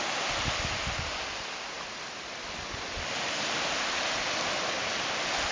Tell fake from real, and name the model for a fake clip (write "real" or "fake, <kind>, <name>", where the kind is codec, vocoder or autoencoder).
real